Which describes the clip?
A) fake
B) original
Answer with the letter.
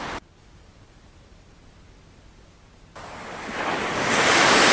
B